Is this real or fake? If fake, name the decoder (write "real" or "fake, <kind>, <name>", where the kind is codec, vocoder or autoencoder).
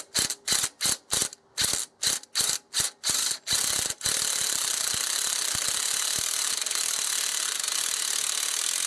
real